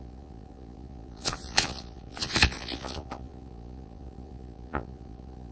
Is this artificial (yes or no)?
yes